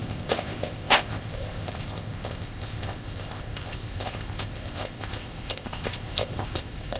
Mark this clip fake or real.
fake